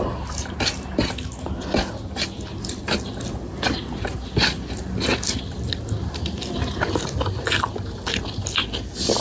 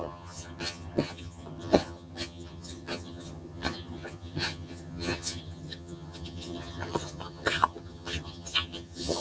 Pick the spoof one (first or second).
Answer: second